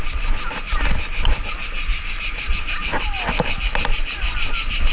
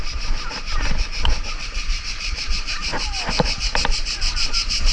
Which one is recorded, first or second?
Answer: first